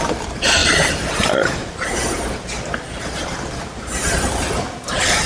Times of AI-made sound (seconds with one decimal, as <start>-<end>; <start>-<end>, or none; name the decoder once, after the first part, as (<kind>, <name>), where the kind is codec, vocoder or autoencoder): none